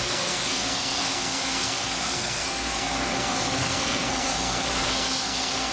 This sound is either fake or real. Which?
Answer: fake